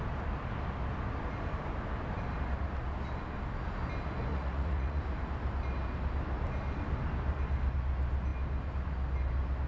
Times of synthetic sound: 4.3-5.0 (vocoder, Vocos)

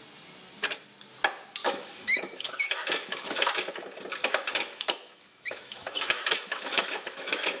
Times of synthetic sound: 1.6-3.7 (autoencoder, DAC-VAE); 4.2-7.6

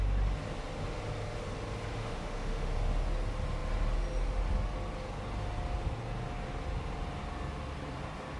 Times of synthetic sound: 2.0-2.7 (autoencoder, DAC-VAE)

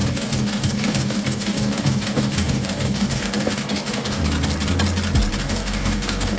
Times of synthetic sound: 0.0-4.2 (codec, DAC); 5.4-6.4